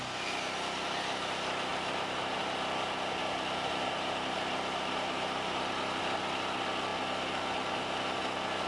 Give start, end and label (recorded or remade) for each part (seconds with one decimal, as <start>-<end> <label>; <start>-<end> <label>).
0.0-1.7 recorded; 1.7-2.4 remade; 2.4-3.2 recorded; 3.2-6.0 remade; 6.0-8.7 recorded